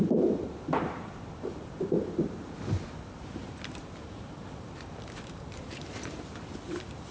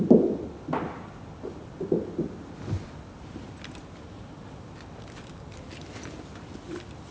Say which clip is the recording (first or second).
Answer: second